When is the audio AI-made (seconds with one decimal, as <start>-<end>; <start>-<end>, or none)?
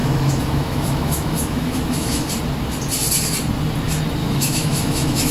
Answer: 0.0-2.3; 4.2-5.3